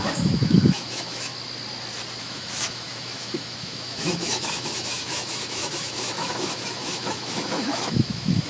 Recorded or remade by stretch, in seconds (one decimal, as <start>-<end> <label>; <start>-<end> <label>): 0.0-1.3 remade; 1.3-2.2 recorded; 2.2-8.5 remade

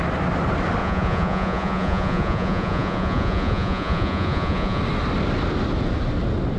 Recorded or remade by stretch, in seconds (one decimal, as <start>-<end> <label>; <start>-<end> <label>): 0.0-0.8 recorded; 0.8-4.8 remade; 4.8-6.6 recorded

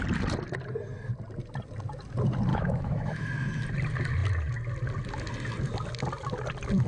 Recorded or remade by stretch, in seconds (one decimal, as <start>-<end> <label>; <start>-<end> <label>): 0.0-2.5 recorded; 2.5-3.3 remade; 3.3-6.9 recorded

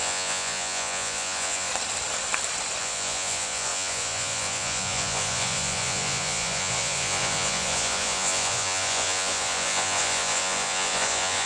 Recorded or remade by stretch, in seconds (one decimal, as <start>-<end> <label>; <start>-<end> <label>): 0.0-1.7 remade; 1.7-2.8 recorded; 2.8-11.5 remade

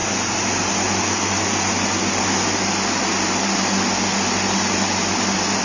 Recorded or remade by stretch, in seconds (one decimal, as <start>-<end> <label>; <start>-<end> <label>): 0.0-5.6 recorded